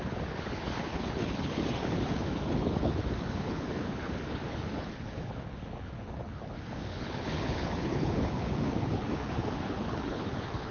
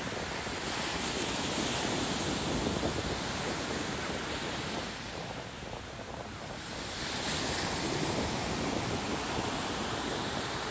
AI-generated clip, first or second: first